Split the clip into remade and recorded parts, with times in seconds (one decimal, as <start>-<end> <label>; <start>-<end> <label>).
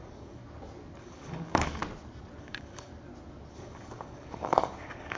0.0-0.4 remade; 0.4-1.0 recorded; 1.0-1.8 remade; 1.8-2.4 recorded; 2.4-2.9 remade; 2.9-3.5 recorded; 3.5-5.2 remade